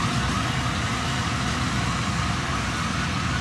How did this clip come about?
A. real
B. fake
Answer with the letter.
A